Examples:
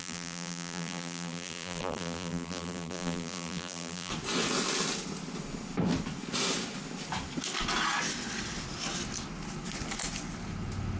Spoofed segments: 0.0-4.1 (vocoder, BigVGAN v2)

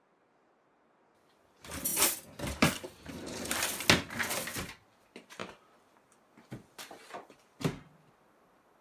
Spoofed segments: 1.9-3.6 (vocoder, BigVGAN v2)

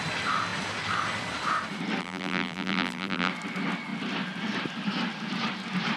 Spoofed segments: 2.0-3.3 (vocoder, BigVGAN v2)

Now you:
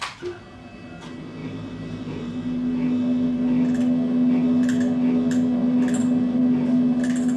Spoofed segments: 1.4-2.3 (vocoder, BigVGAN v2)

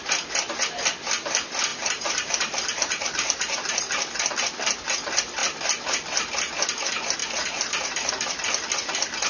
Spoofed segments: 1.7-4.3 (vocoder, BigVGAN v2); 7.2-8.1

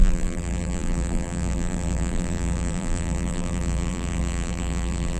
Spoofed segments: 0.0-5.2 (vocoder, BigVGAN v2)

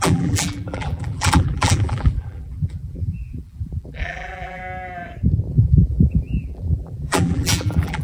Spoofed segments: 0.0-4.6 (vocoder, BigVGAN v2); 5.5-8.0